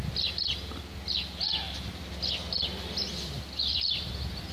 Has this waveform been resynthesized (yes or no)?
no